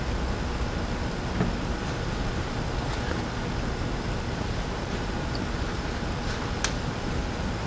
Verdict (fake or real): real